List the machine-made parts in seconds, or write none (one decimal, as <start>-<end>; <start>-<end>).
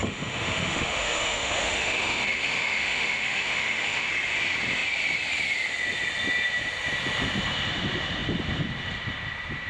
0.0-4.1